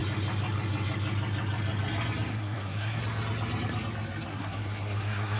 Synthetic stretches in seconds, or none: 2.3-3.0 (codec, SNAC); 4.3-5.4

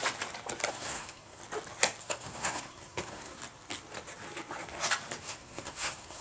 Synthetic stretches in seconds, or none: 0.7-1.4 (codec, SNAC); 2.0-3.4; 5.2-6.2

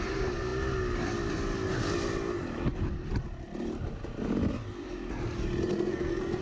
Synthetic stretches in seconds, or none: 5.7-6.4 (codec, SNAC)

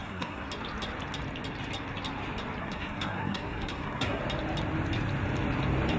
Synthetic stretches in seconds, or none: 0.0-0.5 (codec, SNAC); 2.6-4.2

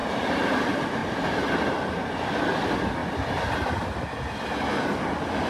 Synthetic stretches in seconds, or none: none

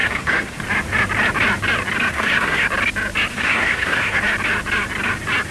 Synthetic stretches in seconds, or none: 0.0-0.6 (codec, SNAC); 2.1-2.7; 3.3-4.2

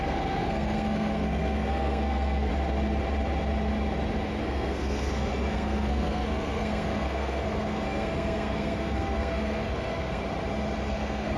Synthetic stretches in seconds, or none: 0.0-2.5 (codec, SNAC); 4.4-10.2; 10.9-11.4